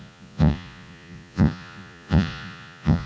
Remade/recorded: remade